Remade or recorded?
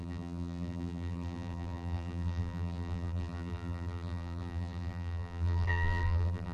remade